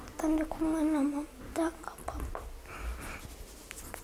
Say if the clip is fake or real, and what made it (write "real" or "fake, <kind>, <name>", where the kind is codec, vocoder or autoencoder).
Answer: real